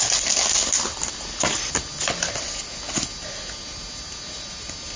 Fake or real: real